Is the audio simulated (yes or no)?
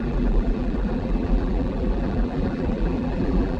yes